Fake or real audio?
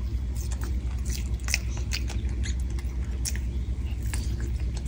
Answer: real